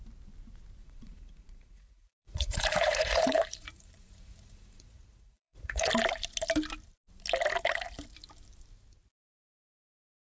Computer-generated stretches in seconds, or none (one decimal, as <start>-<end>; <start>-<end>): 0.8-5.9